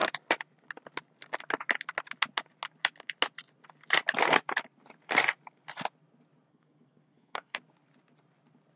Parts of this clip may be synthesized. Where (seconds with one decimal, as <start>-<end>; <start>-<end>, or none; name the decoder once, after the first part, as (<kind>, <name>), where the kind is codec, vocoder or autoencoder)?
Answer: 6.5-7.6 (codec, SNAC)